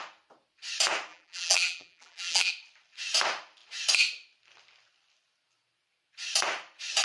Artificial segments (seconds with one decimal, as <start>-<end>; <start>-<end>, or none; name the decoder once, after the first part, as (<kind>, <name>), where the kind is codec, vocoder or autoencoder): 1.1-2.5 (vocoder, BigVGAN v2)